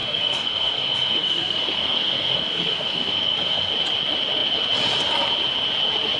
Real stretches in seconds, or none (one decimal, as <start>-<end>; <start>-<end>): 3.7-6.2